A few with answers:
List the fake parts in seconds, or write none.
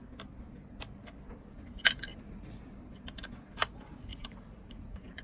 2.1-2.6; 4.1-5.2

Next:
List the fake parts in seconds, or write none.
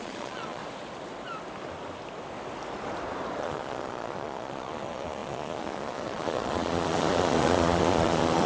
0.0-0.6; 3.4-8.5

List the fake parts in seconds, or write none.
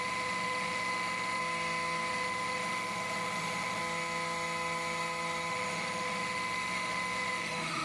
0.0-1.4; 2.1-3.8; 5.5-7.8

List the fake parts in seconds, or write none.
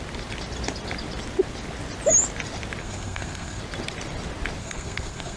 2.8-3.6; 4.6-5.4